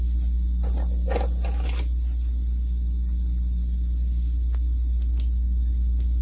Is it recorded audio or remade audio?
recorded